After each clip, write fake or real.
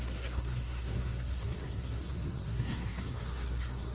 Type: fake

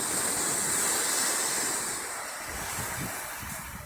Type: real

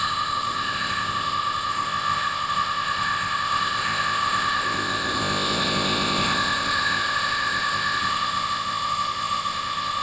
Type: fake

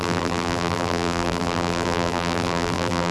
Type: fake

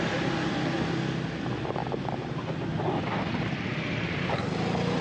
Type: real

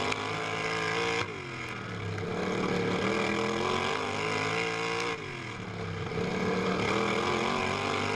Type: real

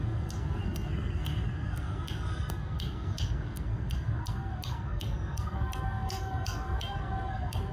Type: fake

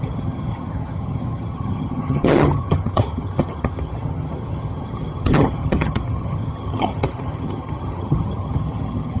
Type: fake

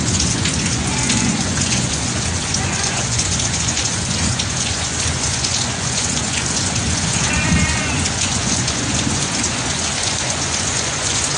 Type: fake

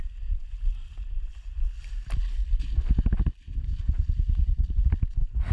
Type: real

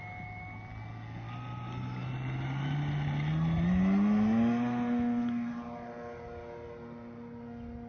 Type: real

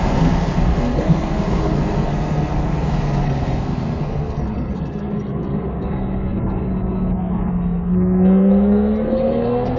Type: fake